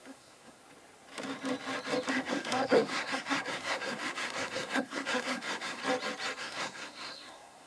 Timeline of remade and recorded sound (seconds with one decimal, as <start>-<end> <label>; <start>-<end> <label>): 0.0-0.6 remade; 0.6-2.1 recorded; 2.1-5.8 remade; 5.8-6.4 recorded; 6.4-7.7 remade